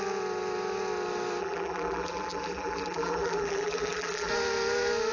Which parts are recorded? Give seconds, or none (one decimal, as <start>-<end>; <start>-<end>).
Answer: 0.0-1.4; 4.3-5.1